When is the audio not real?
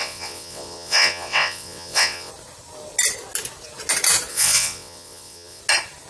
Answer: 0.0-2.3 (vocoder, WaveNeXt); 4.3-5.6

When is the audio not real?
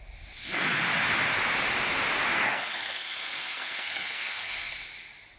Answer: 2.3-4.7 (codec, SNAC)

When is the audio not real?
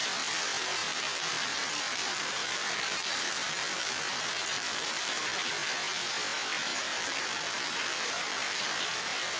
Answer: 0.8-5.5 (vocoder, BigVGAN v2); 6.7-8.8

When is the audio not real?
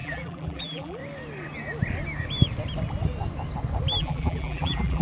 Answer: 0.0-1.0 (vocoder, BigVGAN v2); 4.0-5.0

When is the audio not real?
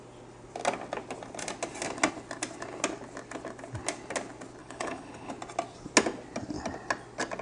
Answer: 4.6-5.3 (codec, HILCodec)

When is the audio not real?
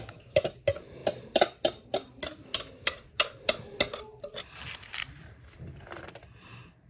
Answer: none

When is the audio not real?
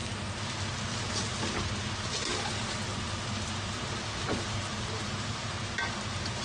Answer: 4.7-5.7 (vocoder, BigVGAN v2)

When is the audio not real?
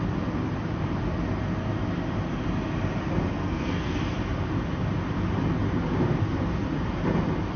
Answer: 3.3-4.0 (codec, SNAC)